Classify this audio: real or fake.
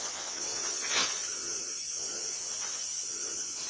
fake